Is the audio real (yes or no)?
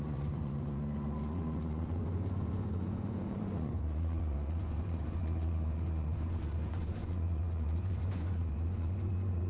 no